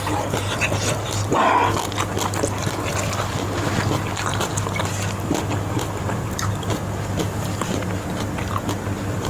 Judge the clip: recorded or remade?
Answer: recorded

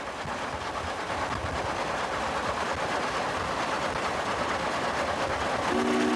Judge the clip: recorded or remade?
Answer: recorded